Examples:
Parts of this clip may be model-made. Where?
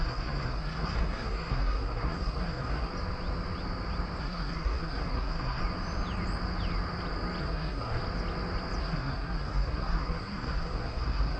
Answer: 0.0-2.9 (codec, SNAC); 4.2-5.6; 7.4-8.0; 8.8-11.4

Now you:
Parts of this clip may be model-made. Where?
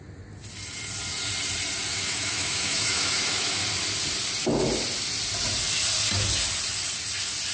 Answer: 1.9-3.6 (autoencoder, DAC-VAE)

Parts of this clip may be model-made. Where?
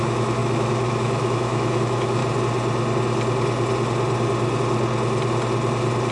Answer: 0.0-2.2 (autoencoder, DAC-VAE)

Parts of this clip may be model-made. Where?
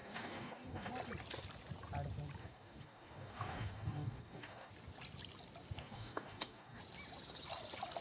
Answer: 0.0-0.9 (codec, DAC); 2.4-4.7; 5.8-6.8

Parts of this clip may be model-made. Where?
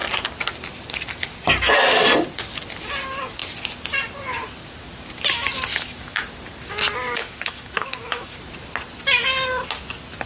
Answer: 5.7-6.2 (autoencoder, DAC-VAE); 7.2-8.4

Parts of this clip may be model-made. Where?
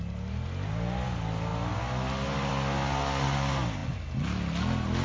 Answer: none